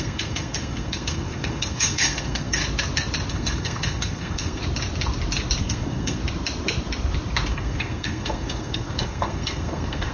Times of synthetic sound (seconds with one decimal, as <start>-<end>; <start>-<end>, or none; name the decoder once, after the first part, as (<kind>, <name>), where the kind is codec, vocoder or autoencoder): 0.0-2.6 (codec, SNAC); 3.3-4.6; 5.6-6.2; 7.5-10.1